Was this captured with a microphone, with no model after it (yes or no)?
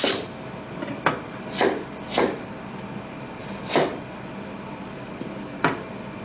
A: yes